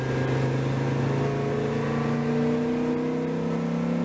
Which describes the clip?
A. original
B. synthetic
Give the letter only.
A